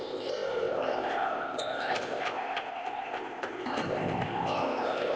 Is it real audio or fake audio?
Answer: fake